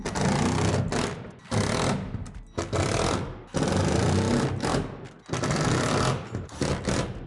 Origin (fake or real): real